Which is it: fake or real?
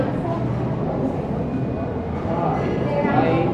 real